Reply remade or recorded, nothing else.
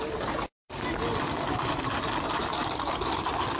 recorded